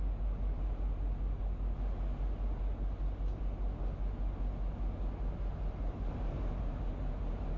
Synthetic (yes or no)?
no